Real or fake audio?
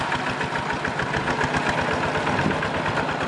real